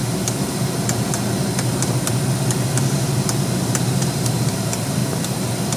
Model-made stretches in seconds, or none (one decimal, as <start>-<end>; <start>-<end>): 3.5-5.0

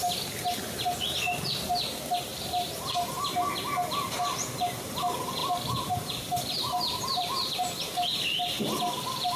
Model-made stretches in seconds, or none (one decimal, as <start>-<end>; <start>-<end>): 2.3-3.3; 5.4-7.8

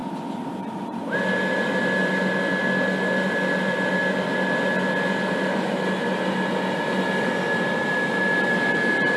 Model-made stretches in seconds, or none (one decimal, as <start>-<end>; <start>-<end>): none